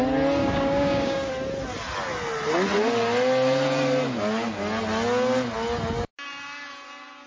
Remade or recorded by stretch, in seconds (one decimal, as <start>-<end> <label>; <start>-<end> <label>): 0.0-0.4 recorded; 0.4-1.3 remade; 1.3-7.3 recorded